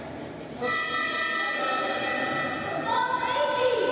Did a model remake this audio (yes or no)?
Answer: no